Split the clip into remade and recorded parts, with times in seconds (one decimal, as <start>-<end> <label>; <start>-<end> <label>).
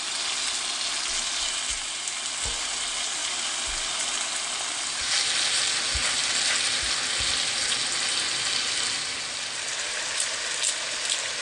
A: 0.0-11.4 recorded